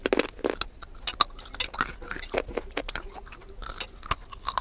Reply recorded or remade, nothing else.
recorded